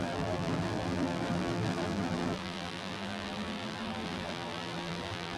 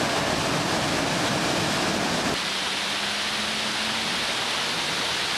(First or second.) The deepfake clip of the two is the first